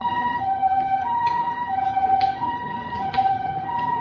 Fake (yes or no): yes